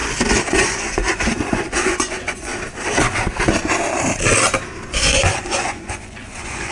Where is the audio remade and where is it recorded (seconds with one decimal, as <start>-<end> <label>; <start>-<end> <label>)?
0.0-0.5 recorded; 0.5-2.5 remade; 2.5-4.9 recorded; 4.9-6.7 remade